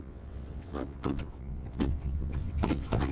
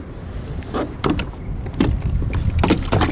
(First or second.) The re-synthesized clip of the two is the first